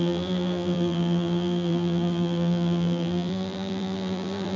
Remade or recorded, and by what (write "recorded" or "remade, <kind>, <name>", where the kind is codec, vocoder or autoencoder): remade, vocoder, BigVGAN v2